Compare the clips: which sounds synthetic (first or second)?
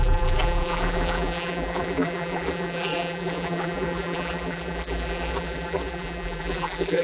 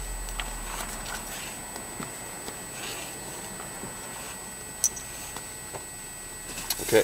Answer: first